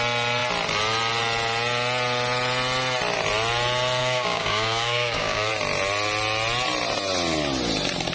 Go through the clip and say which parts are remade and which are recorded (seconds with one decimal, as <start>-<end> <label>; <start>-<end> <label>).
0.0-4.0 recorded; 4.0-5.5 remade; 5.5-8.1 recorded